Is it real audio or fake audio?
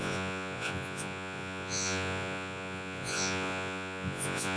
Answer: fake